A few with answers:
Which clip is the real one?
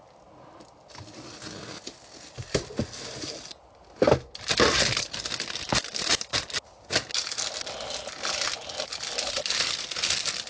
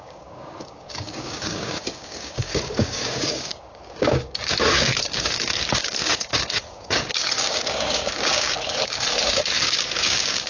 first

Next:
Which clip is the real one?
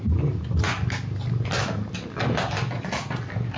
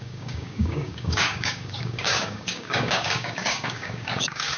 first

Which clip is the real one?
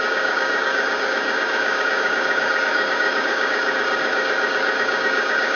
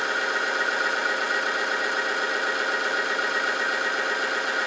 second